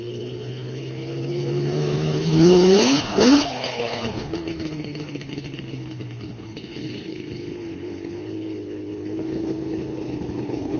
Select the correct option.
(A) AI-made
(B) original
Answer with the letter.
A